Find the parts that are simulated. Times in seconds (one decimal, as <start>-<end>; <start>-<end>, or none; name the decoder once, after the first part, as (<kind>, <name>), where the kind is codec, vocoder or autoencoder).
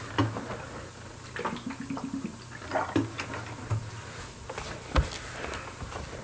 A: none